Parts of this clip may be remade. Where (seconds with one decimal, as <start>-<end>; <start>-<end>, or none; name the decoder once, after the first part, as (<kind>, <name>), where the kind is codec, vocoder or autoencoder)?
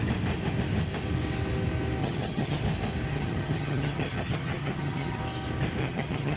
2.0-2.6 (vocoder, HiFi-GAN); 3.1-5.2; 5.8-6.4